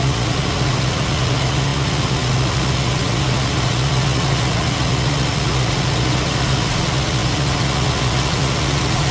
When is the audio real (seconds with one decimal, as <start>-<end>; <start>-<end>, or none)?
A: none